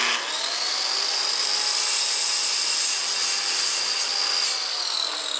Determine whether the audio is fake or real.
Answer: real